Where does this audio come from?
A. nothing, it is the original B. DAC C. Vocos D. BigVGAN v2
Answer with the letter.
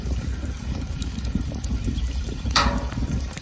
D